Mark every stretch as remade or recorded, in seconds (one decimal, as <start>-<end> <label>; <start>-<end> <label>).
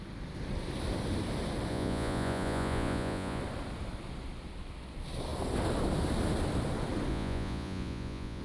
0.0-1.7 recorded; 1.7-3.4 remade; 3.4-7.1 recorded; 7.1-8.4 remade